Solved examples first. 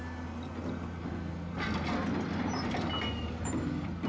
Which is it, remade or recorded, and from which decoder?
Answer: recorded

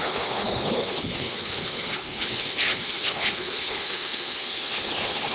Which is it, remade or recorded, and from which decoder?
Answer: remade, codec, HILCodec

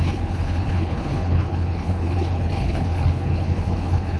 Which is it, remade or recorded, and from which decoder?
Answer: remade, codec, HILCodec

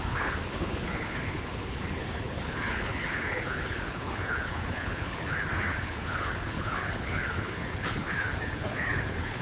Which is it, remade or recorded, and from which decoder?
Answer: remade, codec, HILCodec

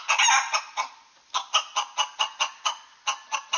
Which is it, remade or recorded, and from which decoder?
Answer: recorded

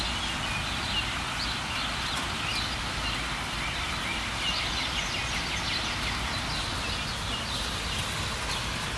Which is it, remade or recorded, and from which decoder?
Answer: recorded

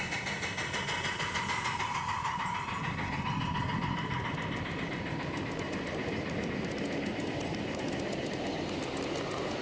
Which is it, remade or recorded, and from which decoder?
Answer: recorded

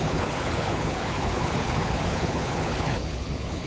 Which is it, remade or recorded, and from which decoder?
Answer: remade, codec, HILCodec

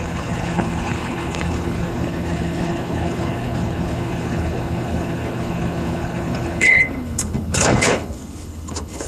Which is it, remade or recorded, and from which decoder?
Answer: remade, codec, HILCodec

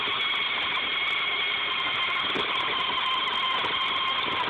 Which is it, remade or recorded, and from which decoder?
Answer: recorded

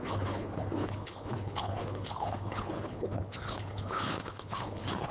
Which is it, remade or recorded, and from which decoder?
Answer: remade, codec, HILCodec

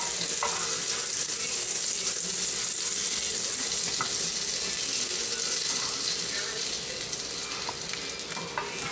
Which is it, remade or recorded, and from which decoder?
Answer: recorded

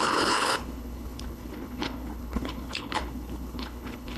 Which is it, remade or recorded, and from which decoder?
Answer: remade, codec, HILCodec